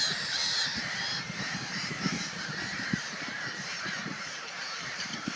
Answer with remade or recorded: remade